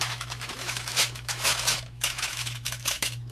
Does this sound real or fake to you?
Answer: fake